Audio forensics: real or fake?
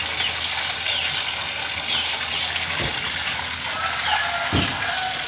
real